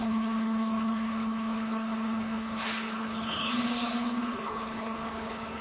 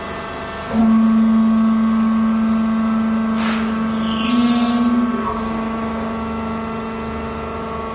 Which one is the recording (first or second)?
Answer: second